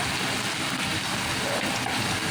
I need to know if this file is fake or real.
real